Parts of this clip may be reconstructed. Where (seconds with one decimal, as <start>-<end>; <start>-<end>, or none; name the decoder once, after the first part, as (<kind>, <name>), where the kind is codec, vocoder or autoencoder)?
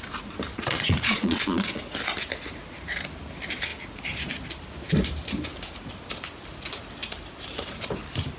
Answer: 0.5-1.8 (vocoder, Vocos)